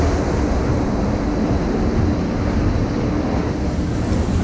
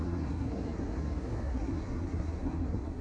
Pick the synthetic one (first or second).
second